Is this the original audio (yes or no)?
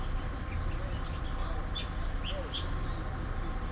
yes